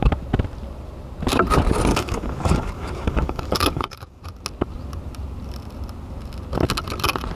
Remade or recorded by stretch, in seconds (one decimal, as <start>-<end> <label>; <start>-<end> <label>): 0.0-1.9 recorded; 1.9-4.2 remade; 4.2-7.4 recorded